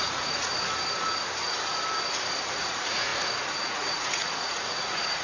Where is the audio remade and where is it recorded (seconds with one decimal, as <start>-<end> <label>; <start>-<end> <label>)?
0.0-0.5 remade; 0.5-2.5 recorded; 2.5-5.2 remade